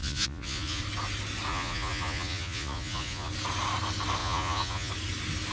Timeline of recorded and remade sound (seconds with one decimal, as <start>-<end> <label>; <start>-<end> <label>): 0.0-0.8 remade; 0.8-1.5 recorded; 1.5-3.3 remade; 3.3-4.2 recorded; 4.2-4.9 remade; 4.9-5.5 recorded